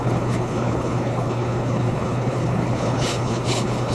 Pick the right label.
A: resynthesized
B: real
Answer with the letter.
A